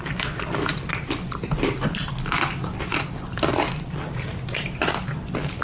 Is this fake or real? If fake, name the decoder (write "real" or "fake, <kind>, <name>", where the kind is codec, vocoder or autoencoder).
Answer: real